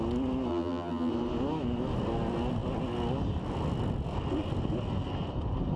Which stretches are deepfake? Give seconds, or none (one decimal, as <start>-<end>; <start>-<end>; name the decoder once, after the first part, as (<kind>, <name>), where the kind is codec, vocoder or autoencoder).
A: 0.5-1.1 (vocoder, BigVGAN v2)

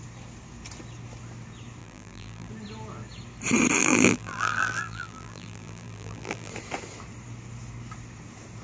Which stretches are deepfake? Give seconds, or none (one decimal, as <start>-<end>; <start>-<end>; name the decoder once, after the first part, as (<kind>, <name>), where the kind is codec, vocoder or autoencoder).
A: 1.8-2.5 (vocoder, BigVGAN v2); 3.8-6.5

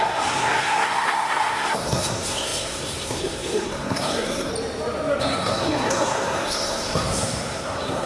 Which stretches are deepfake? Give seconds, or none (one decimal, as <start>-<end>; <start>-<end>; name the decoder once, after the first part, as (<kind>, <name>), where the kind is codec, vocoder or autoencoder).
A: 0.0-4.5 (codec, SNAC); 5.2-8.1

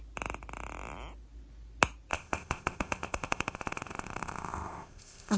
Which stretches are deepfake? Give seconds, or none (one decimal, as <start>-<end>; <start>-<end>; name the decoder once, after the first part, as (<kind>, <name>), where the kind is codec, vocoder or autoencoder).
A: 2.1-5.4 (codec, ZipCodec)

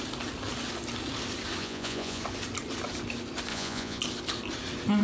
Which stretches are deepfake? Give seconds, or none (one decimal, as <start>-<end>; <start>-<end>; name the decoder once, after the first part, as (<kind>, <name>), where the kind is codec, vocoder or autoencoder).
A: 1.6-2.2 (vocoder, Vocos); 3.5-4.0